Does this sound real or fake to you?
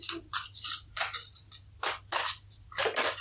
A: real